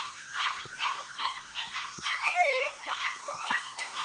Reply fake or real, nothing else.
fake